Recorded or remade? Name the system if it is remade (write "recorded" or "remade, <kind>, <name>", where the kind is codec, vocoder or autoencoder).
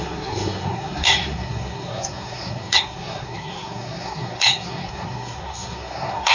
remade, codec, SNAC